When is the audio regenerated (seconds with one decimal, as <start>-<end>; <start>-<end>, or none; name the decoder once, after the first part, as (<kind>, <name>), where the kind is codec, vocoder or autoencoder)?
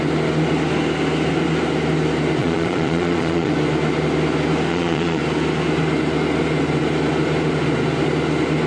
2.4-3.5 (vocoder, Vocos); 4.7-5.2